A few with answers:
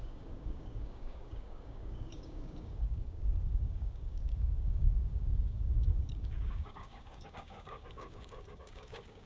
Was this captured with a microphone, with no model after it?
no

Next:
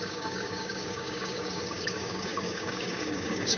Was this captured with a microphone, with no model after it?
no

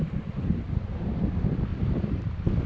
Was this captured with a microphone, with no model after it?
yes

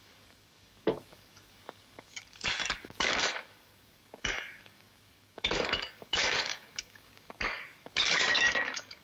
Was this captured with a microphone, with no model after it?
no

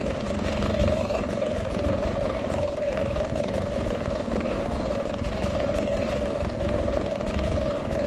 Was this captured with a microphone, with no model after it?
no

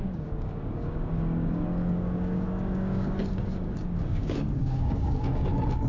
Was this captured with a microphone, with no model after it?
no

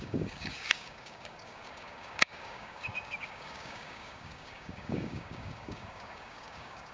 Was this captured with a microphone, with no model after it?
no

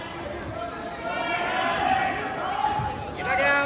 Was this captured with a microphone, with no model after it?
yes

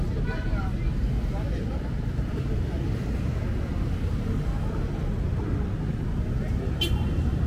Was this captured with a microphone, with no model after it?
yes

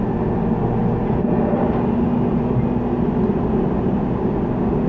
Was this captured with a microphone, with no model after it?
yes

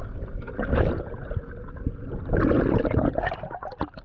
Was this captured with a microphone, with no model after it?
yes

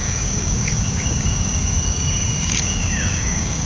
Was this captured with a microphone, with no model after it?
no